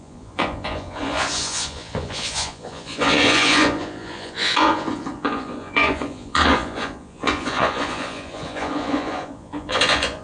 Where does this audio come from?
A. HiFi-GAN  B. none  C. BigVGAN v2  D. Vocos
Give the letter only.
D